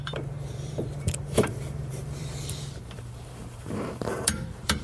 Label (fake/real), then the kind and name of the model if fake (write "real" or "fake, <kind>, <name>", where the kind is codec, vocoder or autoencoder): fake, vocoder, BigVGAN v2